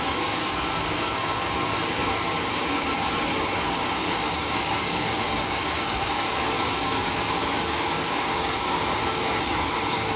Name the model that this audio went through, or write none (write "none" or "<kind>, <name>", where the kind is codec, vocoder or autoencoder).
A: codec, DAC